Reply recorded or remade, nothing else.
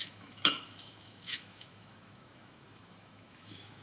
remade